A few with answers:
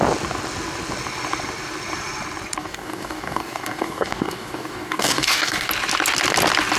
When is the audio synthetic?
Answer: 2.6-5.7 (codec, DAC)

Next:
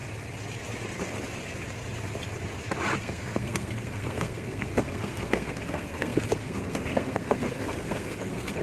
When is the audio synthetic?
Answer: 3.0-8.6 (codec, SNAC)

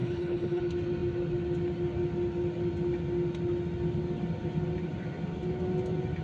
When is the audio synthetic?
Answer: 0.0-0.6 (codec, HILCodec)

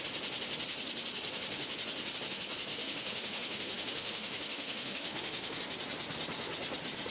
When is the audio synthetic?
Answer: 2.7-5.6 (autoencoder, DAC-VAE)

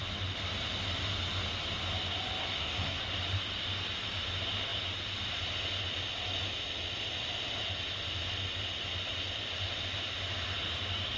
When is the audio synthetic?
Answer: 2.4-3.0 (codec, SNAC)

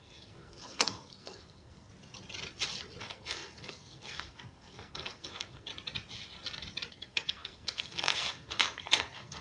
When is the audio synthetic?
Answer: 0.0-1.9 (codec, SNAC); 3.0-5.7; 6.9-9.4